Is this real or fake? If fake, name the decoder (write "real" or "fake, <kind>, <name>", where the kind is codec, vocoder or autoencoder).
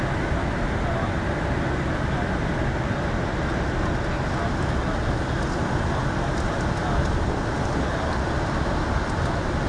real